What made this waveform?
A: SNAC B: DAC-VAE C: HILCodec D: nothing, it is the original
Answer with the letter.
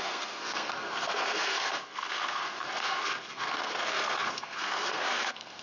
A